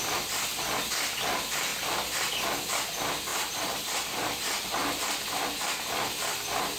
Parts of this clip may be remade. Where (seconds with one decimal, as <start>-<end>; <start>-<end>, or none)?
3.3-5.0